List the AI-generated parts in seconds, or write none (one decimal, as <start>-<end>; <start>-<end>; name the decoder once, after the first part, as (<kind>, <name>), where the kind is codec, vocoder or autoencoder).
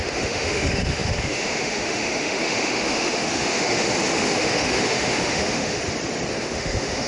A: 0.0-5.8 (autoencoder, DAC-VAE); 6.4-7.1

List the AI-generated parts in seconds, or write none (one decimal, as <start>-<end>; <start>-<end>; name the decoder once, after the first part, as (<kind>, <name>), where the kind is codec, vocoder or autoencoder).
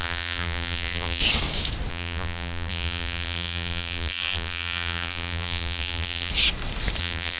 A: 0.0-1.2 (vocoder, BigVGAN v2); 1.9-6.3; 7.0-7.4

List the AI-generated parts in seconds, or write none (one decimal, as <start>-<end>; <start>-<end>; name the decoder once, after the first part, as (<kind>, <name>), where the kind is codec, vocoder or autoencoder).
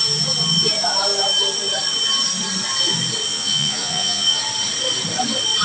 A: 3.3-4.4 (vocoder, Vocos)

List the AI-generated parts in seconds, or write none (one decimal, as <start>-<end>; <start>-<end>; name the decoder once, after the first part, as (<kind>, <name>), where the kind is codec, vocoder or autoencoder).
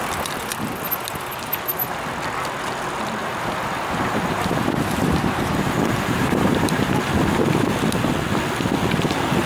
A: 3.2-7.0 (vocoder, BigVGAN v2)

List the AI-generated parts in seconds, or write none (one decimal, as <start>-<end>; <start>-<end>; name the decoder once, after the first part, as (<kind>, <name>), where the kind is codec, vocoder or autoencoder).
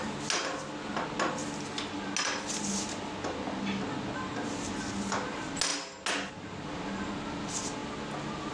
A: none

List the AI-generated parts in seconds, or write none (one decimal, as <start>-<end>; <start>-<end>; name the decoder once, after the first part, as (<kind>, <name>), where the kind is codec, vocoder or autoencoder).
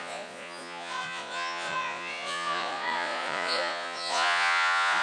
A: 0.0-5.0 (vocoder, Vocos)